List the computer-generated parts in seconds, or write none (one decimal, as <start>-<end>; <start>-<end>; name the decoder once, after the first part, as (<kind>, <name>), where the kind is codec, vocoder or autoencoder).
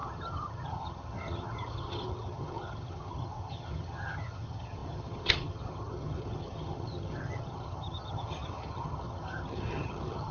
0.0-10.3 (vocoder, HiFi-GAN)